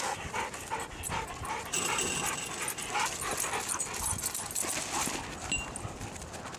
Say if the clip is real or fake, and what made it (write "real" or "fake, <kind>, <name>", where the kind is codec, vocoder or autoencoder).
real